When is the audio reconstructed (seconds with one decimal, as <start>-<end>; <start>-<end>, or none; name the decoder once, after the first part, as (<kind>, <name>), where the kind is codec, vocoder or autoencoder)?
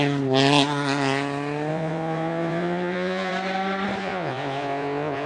1.7-3.3 (vocoder, Vocos); 4.0-5.3